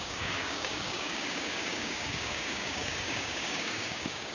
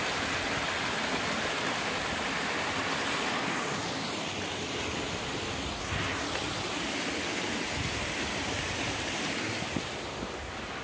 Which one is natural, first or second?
second